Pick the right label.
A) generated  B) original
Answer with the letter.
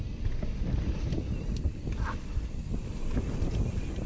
B